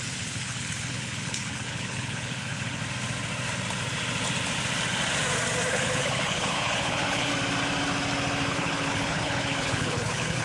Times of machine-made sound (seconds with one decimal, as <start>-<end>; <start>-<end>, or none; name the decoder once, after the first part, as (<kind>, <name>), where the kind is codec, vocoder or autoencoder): 0.0-2.8 (codec, HILCodec); 5.7-7.3; 8.5-10.4